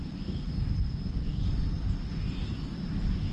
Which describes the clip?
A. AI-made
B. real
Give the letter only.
B